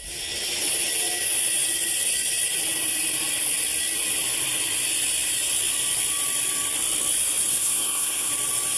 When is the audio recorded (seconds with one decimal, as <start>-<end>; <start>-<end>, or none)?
0.0-7.5; 8.3-8.8

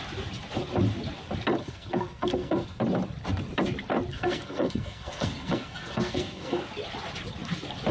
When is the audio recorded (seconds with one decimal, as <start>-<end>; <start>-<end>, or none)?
0.0-1.6; 2.8-4.1; 6.6-7.9

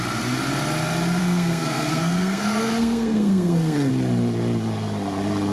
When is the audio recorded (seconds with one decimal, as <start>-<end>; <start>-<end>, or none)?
0.0-1.2; 3.9-5.5